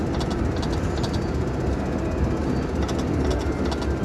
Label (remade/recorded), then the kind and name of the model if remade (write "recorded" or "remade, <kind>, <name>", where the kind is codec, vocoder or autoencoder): recorded